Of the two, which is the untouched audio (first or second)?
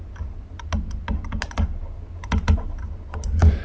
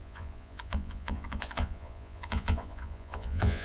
first